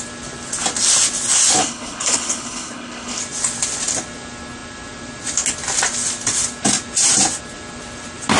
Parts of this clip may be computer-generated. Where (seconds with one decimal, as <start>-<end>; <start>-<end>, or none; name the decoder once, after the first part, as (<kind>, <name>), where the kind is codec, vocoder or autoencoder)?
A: 1.6-3.2 (codec, HILCodec)